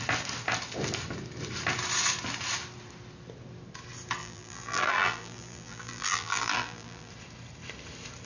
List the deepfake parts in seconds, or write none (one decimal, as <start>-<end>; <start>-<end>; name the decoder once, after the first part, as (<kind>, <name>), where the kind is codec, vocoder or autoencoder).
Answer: 4.2-7.1 (vocoder, BigVGAN v2)